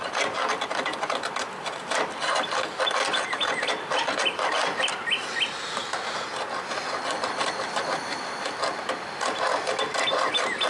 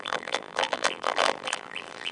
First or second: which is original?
first